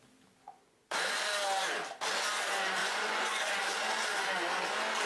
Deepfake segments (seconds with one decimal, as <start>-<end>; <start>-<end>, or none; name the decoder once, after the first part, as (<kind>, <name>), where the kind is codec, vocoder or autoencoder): 0.4-1.1 (vocoder, Vocos); 2.8-3.6